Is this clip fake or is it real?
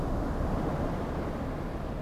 real